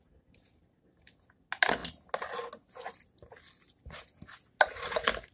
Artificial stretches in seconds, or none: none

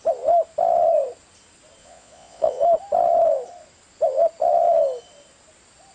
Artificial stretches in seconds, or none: 1.8-2.6

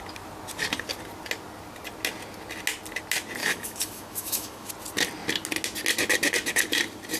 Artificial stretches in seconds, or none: 3.4-4.7

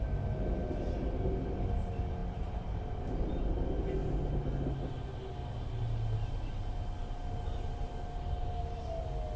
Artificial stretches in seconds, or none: none

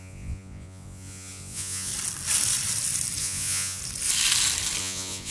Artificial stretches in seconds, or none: 0.0-1.9; 3.2-3.8; 4.8-5.3

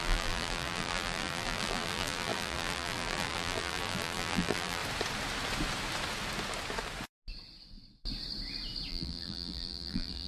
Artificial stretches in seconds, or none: 0.0-4.8; 8.9-10.3

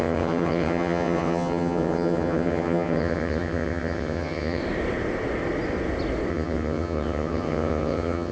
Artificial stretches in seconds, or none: 0.0-4.6; 6.3-8.3